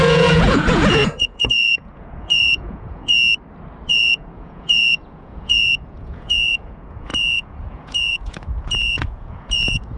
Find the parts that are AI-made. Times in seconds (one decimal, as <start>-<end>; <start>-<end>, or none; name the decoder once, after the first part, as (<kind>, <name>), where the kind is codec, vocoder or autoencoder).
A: 0.0-3.1 (vocoder, Vocos); 3.9-10.0